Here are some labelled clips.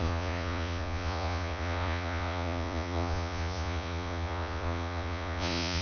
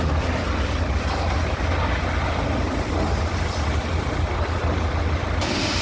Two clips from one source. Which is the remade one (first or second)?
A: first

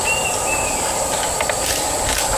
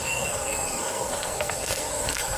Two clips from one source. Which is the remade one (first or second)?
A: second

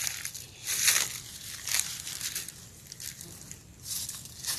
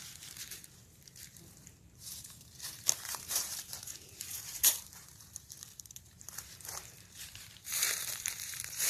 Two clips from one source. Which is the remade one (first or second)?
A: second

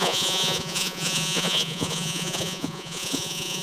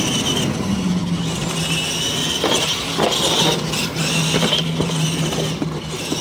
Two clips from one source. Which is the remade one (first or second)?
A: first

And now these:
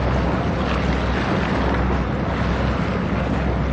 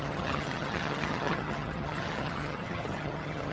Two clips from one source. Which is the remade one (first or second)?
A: second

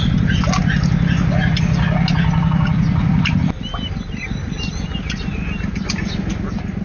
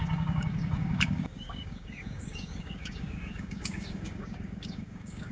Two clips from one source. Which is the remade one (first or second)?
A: second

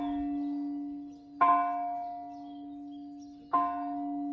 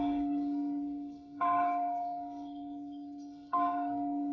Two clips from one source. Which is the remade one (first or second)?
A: second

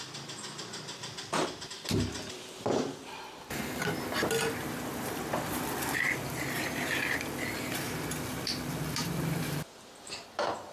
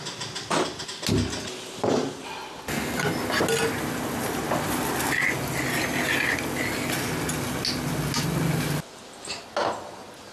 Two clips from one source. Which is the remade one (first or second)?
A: first